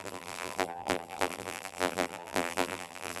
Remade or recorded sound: remade